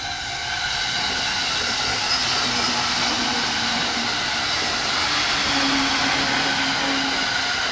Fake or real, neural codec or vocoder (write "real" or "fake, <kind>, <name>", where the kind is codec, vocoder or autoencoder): real